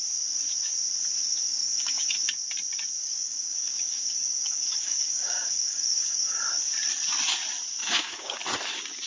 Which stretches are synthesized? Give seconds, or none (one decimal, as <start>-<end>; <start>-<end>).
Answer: 1.3-2.1; 3.0-6.4; 7.8-8.4